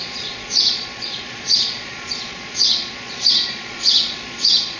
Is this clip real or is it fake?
fake